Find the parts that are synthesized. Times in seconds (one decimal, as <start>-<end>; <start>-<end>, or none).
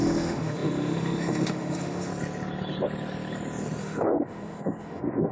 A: 0.0-2.1; 3.8-5.3